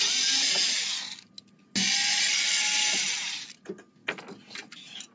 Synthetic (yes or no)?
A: no